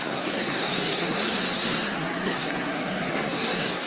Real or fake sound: fake